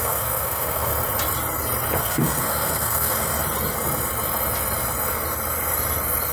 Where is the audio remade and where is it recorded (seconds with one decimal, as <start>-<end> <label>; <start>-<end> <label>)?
0.0-0.9 remade; 0.9-2.0 recorded; 2.0-3.3 remade; 3.3-6.3 recorded